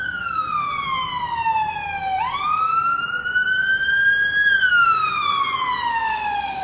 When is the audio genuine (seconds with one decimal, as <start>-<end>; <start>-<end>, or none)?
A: 0.7-4.7; 5.3-5.9